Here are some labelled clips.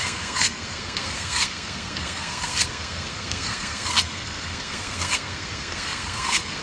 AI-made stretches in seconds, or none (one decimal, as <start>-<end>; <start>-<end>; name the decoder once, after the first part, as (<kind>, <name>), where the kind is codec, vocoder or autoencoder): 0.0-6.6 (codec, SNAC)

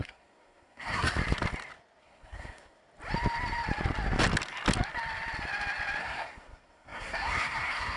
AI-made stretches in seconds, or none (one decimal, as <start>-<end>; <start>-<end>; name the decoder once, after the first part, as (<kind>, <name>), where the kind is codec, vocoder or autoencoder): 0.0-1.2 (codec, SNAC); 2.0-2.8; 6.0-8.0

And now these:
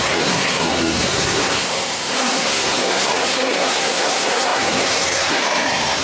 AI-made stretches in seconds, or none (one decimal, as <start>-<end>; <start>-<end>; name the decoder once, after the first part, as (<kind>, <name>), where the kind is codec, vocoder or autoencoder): 0.0-6.0 (codec, SNAC)